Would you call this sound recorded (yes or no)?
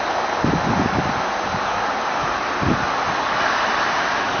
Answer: yes